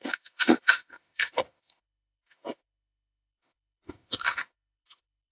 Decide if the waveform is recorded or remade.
remade